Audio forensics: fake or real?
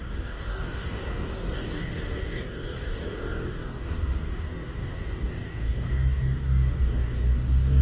fake